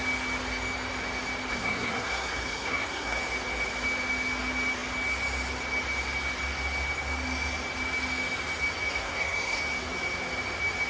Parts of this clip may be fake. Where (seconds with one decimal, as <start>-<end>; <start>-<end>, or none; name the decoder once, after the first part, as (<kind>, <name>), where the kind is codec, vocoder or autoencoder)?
1.5-3.2 (codec, SNAC); 8.9-9.6